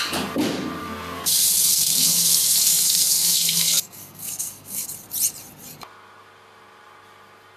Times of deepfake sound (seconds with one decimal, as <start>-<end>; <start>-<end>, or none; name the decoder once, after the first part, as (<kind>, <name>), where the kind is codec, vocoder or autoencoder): 0.8-4.9 (codec, SNAC)